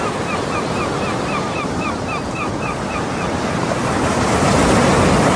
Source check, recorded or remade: recorded